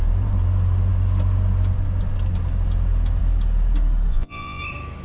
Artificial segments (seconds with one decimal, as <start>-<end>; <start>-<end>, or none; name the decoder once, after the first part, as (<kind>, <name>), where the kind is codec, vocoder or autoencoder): 4.1-4.6 (vocoder, Vocos)